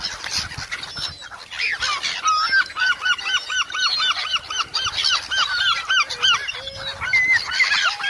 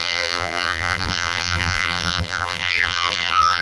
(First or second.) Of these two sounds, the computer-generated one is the second